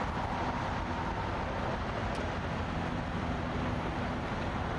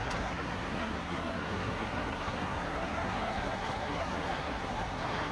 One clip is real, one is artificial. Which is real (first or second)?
first